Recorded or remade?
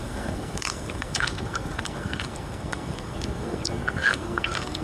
remade